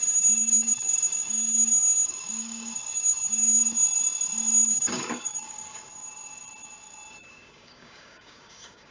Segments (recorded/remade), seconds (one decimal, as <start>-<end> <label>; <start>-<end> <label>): 0.0-3.6 remade; 3.6-4.7 recorded; 4.7-5.9 remade; 5.9-7.1 recorded; 7.1-8.9 remade